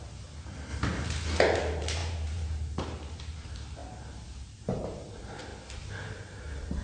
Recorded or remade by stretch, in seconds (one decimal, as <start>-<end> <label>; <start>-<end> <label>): 0.0-0.7 remade; 0.7-1.4 recorded; 1.4-3.8 remade; 3.8-4.3 recorded; 4.3-5.5 remade; 5.5-6.1 recorded; 6.1-6.8 remade